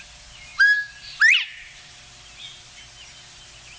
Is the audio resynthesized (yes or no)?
no